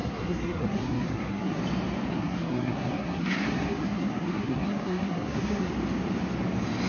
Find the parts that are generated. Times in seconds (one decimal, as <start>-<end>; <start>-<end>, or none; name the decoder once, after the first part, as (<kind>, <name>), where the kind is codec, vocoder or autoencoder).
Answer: 0.0-1.6 (codec, SNAC); 2.1-5.7

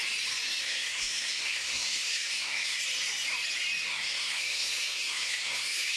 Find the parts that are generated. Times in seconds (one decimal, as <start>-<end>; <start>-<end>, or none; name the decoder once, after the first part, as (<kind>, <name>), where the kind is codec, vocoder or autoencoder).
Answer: 0.6-2.8 (codec, SNAC); 3.9-6.0